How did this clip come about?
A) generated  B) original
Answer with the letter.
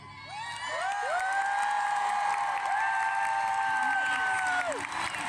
B